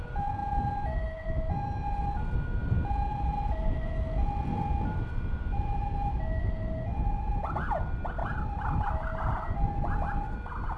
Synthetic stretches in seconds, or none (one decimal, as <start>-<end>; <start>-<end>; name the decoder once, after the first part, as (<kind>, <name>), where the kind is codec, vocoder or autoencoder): 8.2-9.2 (vocoder, BigVGAN v2)